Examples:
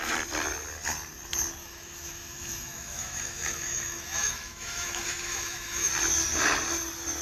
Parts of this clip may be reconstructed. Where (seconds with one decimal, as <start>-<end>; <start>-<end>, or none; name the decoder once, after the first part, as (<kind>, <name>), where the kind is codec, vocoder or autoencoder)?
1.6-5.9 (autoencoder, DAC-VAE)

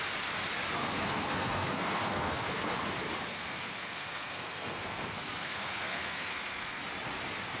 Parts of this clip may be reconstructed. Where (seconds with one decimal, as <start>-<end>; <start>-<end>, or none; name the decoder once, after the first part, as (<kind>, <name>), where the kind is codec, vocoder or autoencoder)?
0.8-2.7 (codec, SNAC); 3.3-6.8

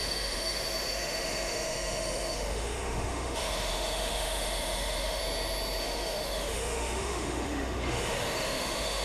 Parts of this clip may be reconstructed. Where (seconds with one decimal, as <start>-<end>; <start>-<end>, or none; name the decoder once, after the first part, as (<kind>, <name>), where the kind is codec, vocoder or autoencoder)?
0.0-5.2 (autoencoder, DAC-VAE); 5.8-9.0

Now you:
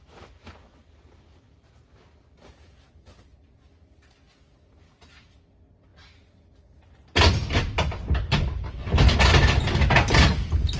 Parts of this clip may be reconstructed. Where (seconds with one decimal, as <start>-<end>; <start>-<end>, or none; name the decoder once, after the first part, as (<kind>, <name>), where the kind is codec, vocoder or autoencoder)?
none

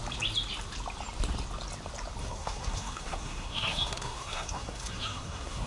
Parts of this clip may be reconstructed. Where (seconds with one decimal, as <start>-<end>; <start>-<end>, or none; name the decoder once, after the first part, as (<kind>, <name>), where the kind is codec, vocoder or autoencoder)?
2.2-5.7 (codec, SNAC)

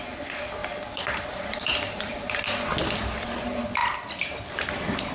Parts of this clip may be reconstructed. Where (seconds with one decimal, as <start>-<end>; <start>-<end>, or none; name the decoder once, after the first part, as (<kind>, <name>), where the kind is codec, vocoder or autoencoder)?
0.6-2.4 (vocoder, BigVGAN v2)

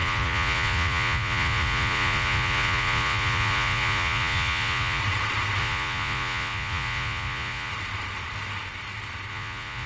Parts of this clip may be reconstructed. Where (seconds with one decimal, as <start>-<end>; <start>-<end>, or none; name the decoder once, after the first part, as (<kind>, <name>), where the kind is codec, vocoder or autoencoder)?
0.0-5.0 (vocoder, Vocos); 5.6-7.7; 9.3-9.9

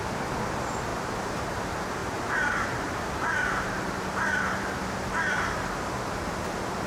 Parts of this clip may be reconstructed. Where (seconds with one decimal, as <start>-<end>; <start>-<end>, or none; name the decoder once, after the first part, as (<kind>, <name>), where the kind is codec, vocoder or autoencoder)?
0.9-1.6 (vocoder, BigVGAN v2); 2.0-5.8